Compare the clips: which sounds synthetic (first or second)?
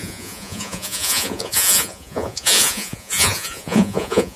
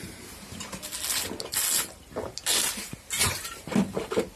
first